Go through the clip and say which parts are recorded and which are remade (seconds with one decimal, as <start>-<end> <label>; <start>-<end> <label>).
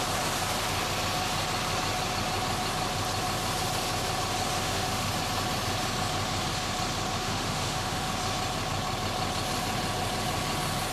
0.0-4.6 recorded; 4.6-5.1 remade; 5.1-7.1 recorded; 7.1-8.1 remade; 8.1-10.9 recorded